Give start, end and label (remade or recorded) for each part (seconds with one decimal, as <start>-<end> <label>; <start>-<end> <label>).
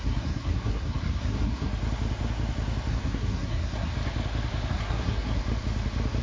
0.0-1.7 remade; 1.7-2.9 recorded; 2.9-3.9 remade; 3.9-4.7 recorded; 4.7-5.4 remade; 5.4-6.2 recorded